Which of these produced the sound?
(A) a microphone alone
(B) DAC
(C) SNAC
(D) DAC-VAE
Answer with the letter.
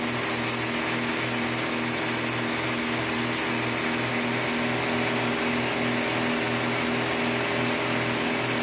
A